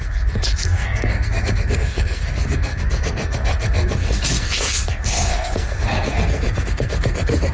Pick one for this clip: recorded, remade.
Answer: remade